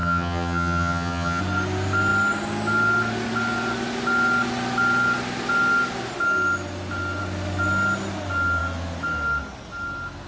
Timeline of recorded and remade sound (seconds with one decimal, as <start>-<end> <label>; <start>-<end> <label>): 0.0-1.4 remade; 1.4-10.3 recorded